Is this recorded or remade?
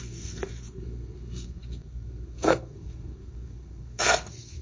remade